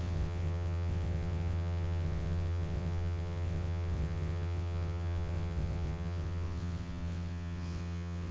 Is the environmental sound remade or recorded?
remade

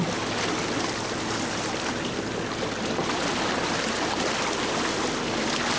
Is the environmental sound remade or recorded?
recorded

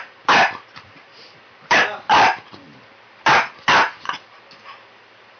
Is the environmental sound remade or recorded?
remade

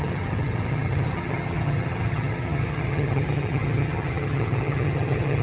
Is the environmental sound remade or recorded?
remade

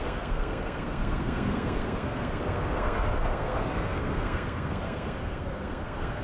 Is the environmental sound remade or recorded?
remade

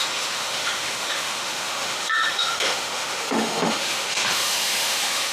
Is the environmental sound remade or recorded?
remade